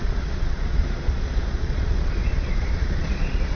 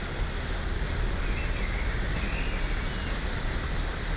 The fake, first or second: first